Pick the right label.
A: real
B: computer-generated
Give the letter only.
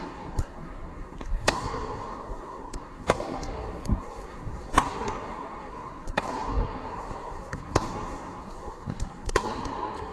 B